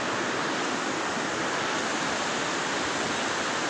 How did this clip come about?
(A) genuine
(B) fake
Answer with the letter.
A